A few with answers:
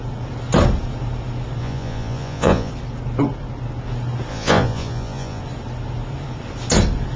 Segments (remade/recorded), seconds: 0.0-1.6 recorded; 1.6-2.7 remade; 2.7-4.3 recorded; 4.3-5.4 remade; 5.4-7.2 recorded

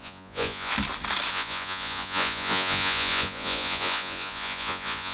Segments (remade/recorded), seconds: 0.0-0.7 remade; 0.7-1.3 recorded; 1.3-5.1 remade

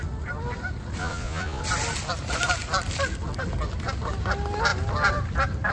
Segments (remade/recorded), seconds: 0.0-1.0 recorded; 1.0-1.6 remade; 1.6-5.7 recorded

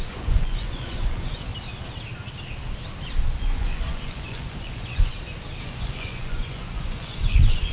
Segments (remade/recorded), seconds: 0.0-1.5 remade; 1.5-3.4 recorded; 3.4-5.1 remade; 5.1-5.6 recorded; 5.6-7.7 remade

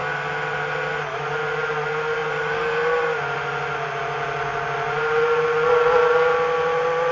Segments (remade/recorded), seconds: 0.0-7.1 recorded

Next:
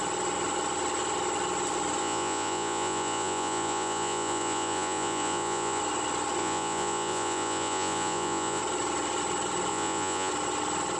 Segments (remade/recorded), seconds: 0.0-2.0 recorded; 2.0-5.8 remade; 5.8-6.4 recorded; 6.4-8.6 remade; 8.6-9.7 recorded; 9.7-10.3 remade; 10.3-11.0 recorded

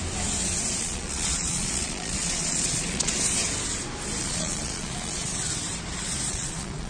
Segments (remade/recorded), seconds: 0.0-0.8 recorded; 0.8-3.1 remade; 3.1-4.2 recorded; 4.2-5.3 remade; 5.3-6.3 recorded; 6.3-6.9 remade

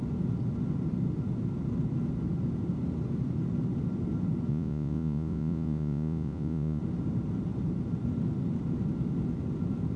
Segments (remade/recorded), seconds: 0.0-4.5 recorded; 4.5-6.8 remade; 6.8-10.0 recorded